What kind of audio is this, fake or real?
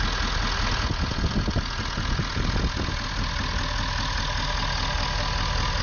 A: real